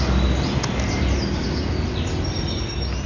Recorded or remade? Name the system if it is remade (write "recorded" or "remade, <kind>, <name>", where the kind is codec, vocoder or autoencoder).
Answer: recorded